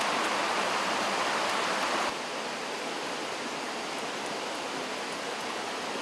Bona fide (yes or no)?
yes